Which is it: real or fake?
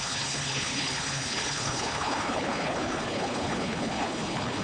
fake